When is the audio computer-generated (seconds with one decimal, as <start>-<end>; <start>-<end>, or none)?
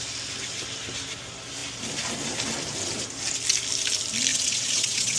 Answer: 4.3-5.2